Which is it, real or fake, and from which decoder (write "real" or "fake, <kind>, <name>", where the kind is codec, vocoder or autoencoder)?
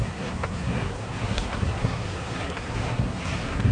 fake, codec, SNAC